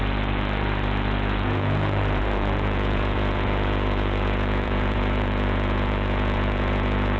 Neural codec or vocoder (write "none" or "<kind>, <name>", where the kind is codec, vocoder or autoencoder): vocoder, Vocos